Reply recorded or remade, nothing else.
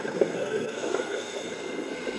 remade